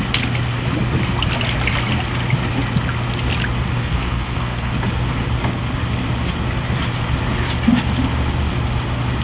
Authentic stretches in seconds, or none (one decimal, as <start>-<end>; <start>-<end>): 0.0-3.7; 4.7-9.2